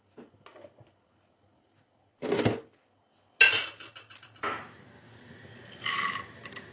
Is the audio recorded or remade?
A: recorded